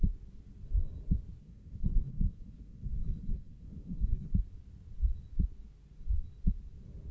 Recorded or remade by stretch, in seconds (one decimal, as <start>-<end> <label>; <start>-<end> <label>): 0.0-1.4 recorded; 1.4-4.3 remade; 4.3-7.1 recorded